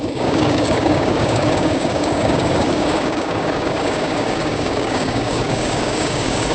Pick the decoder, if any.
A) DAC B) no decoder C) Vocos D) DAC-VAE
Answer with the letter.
A